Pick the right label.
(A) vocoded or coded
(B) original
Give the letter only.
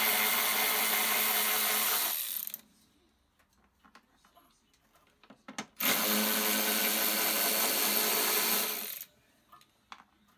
B